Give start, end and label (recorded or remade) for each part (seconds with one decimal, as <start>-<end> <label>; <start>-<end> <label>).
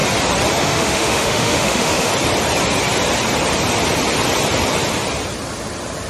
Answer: 0.0-0.6 recorded; 0.6-2.1 remade; 2.1-6.1 recorded